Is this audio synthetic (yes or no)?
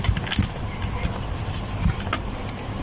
no